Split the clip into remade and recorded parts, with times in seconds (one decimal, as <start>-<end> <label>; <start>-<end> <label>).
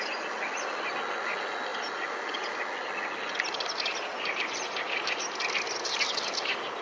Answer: 0.0-1.7 recorded; 1.7-2.6 remade; 2.6-4.1 recorded; 4.1-5.2 remade; 5.2-6.8 recorded